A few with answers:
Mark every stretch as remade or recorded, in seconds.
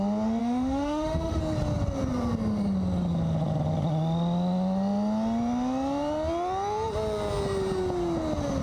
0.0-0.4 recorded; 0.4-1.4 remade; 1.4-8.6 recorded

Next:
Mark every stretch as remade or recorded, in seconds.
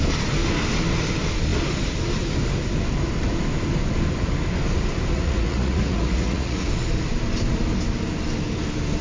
0.0-5.1 recorded; 5.1-6.7 remade; 6.7-9.0 recorded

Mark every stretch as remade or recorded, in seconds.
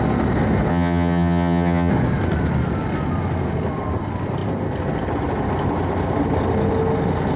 0.0-0.7 recorded; 0.7-1.9 remade; 1.9-7.4 recorded